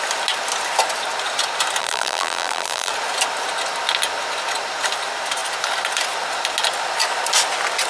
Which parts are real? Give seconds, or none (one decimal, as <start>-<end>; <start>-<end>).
0.0-1.8; 2.9-7.9